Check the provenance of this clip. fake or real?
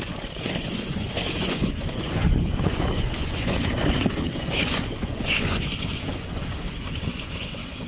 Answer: fake